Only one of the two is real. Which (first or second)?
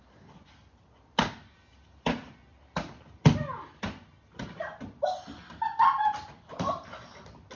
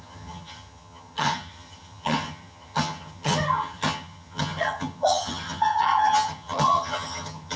first